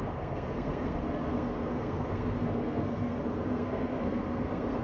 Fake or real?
fake